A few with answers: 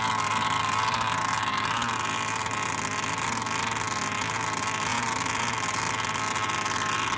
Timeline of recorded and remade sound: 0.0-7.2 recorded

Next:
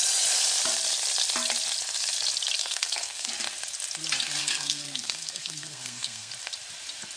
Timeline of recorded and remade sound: 0.0-2.6 recorded; 2.6-3.3 remade; 3.3-4.4 recorded; 4.4-6.3 remade; 6.3-7.2 recorded